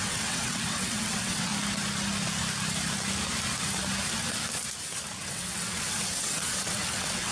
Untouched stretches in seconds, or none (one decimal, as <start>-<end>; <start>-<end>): 1.5-5.3

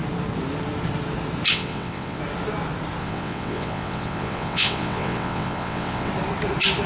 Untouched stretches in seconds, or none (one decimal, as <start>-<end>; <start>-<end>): 0.0-1.5; 2.2-3.0; 6.1-6.9

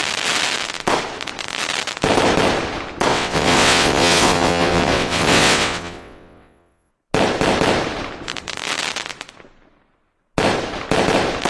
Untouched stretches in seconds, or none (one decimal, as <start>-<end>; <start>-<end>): 0.0-3.1; 6.9-11.5